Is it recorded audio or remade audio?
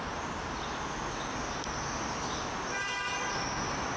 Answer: recorded